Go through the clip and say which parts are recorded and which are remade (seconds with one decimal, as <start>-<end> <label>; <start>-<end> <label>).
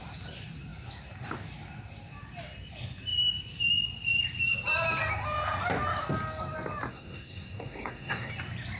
0.0-6.9 recorded; 6.9-8.3 remade; 8.3-8.8 recorded